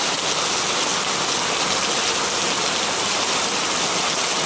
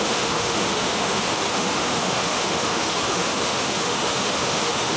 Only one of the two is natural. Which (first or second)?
first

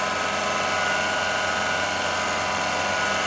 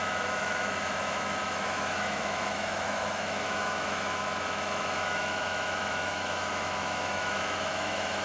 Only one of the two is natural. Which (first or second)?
first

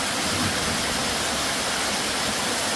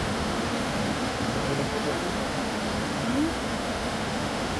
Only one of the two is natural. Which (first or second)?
first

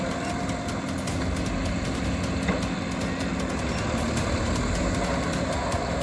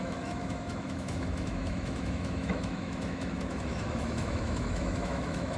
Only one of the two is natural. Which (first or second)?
first